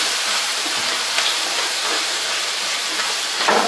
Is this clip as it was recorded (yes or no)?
no